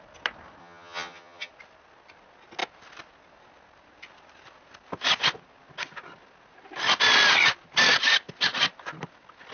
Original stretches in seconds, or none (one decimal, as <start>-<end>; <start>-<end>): 0.0-0.6; 1.5-9.5